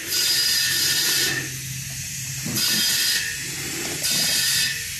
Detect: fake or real real